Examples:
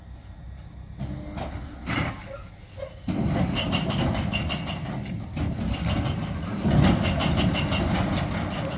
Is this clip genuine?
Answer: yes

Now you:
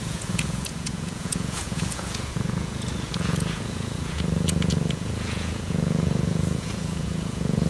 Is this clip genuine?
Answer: no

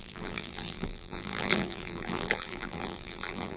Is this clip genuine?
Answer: no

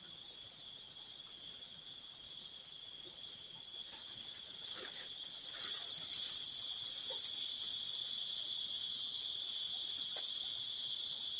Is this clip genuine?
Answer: no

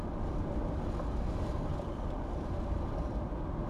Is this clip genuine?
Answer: yes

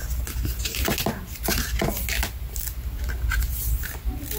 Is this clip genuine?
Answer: yes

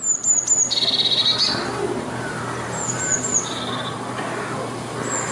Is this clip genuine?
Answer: yes